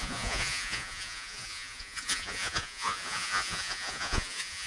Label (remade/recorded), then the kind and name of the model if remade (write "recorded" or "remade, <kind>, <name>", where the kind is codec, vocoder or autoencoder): remade, vocoder, Vocos